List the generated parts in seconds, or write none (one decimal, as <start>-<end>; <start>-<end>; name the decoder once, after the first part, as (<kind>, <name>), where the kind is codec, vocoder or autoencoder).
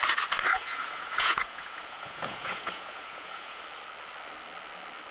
0.5-3.6 (vocoder, Vocos)